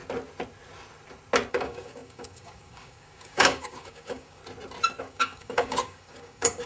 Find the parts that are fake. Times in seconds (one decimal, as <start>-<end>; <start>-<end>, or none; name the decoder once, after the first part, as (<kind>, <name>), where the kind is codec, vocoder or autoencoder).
1.5-4.4 (codec, DAC); 5.0-6.7